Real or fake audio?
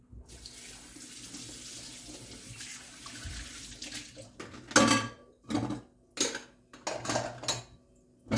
real